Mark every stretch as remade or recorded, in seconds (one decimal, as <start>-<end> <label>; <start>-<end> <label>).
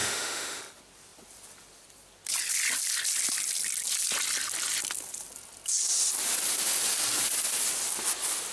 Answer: 0.0-0.6 remade; 0.6-8.5 recorded